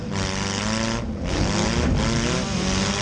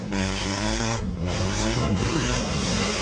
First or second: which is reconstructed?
second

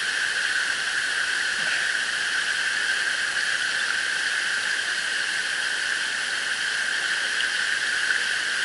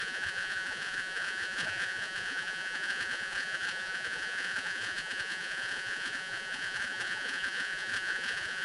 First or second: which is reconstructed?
second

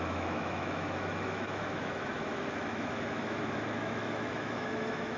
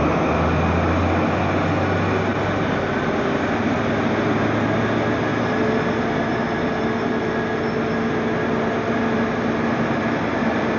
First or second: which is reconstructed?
first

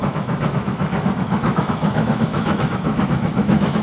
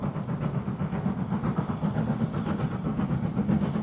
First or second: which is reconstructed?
first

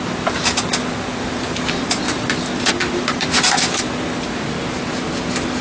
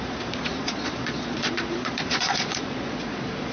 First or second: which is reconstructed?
second